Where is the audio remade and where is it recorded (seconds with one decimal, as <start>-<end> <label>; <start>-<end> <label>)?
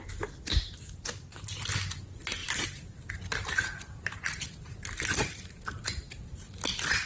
0.0-2.4 recorded; 2.4-3.2 remade; 3.2-5.2 recorded; 5.2-6.1 remade; 6.1-7.1 recorded